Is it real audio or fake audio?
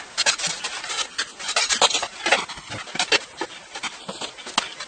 real